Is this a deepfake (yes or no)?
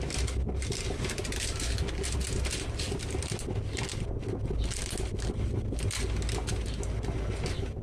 no